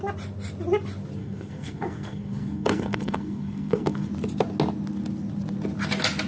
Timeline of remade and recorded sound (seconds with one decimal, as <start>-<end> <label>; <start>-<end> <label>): 0.0-1.2 recorded; 1.2-4.1 remade; 4.1-6.3 recorded

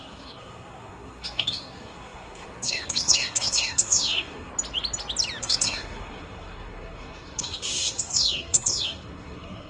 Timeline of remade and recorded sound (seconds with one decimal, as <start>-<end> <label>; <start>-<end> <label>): 0.0-4.5 remade; 4.5-5.4 recorded; 5.4-9.7 remade

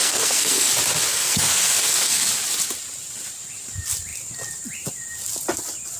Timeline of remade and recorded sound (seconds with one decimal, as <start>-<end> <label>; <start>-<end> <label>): 0.0-0.7 remade; 0.7-1.1 recorded; 1.1-2.3 remade; 2.3-6.0 recorded